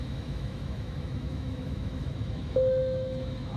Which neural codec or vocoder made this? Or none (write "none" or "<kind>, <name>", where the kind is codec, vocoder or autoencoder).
autoencoder, DAC-VAE